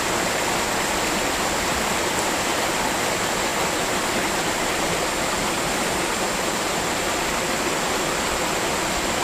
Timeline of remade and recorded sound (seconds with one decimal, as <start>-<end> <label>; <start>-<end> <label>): 0.0-3.5 recorded; 3.5-6.9 remade; 6.9-9.2 recorded